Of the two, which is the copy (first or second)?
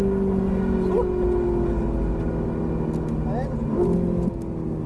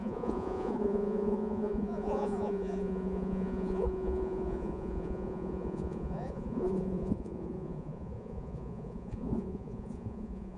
second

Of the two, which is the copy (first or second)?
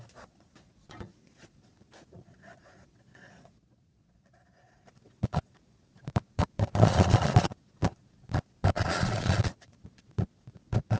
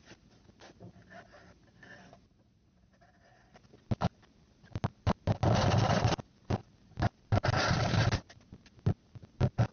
first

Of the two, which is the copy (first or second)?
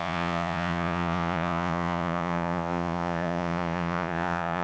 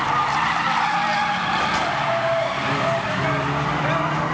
first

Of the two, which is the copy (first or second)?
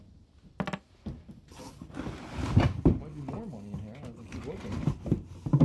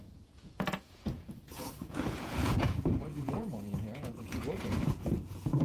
second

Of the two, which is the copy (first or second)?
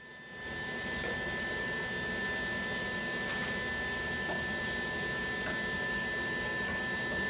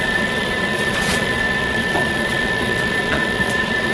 second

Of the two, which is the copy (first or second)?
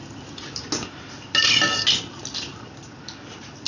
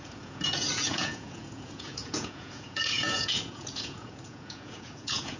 second